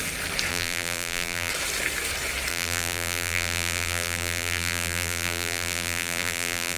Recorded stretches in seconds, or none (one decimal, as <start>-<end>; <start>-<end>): 0.0-0.5; 1.5-2.5